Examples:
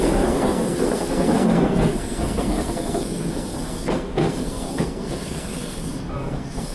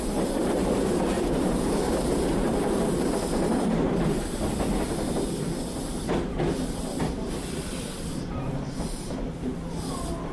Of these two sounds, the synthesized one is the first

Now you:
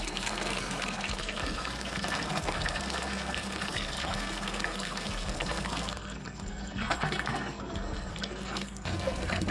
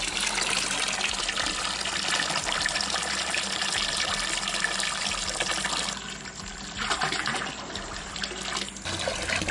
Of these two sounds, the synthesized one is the first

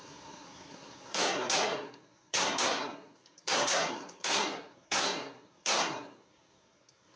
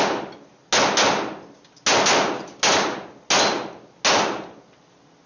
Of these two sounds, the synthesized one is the first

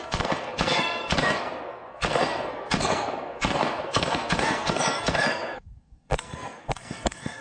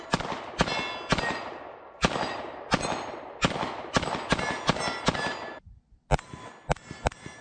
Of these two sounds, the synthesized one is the first